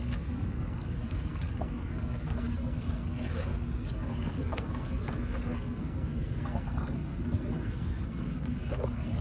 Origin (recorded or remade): remade